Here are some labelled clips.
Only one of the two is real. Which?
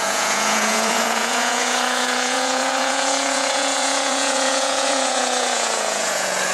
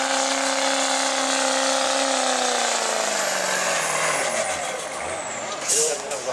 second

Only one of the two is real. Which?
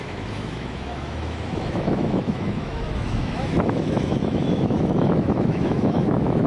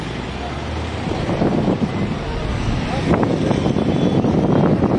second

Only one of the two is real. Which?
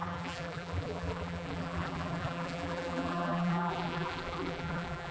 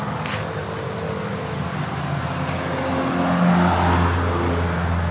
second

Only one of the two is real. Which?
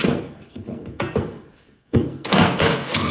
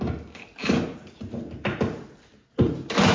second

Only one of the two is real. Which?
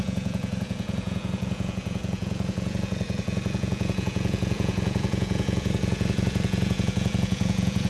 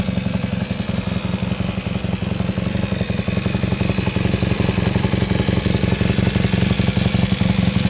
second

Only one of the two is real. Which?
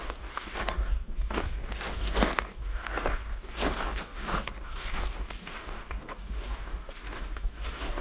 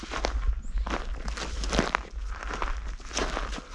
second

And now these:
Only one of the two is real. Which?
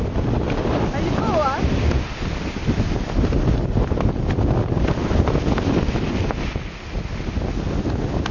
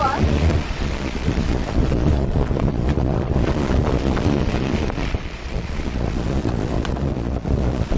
first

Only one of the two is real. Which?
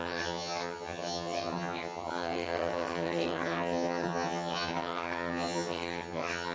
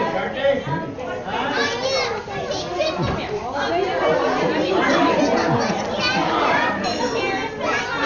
second